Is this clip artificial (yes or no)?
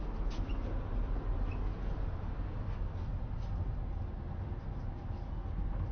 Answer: no